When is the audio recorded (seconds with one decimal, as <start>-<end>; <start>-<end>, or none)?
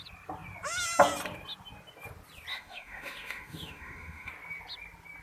0.0-2.5; 4.3-5.2